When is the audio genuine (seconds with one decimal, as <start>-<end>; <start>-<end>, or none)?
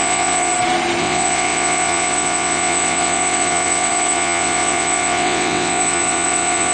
0.5-1.0